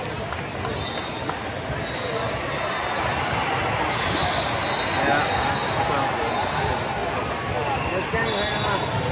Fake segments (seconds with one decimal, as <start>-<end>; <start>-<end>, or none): none